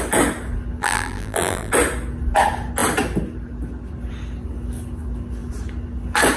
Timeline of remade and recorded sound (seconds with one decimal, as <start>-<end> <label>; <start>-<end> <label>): 0.0-0.8 recorded; 0.8-1.7 remade; 1.7-6.4 recorded